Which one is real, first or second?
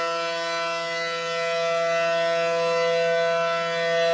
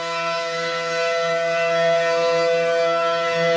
first